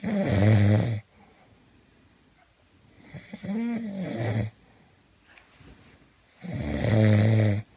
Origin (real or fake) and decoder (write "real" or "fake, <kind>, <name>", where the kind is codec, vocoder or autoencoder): real